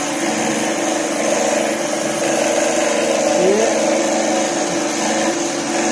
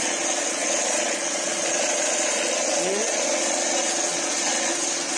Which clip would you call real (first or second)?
first